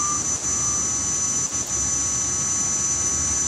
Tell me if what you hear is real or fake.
real